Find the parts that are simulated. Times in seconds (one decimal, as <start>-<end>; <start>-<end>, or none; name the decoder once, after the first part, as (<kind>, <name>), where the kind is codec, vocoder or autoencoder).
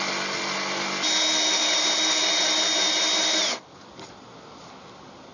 none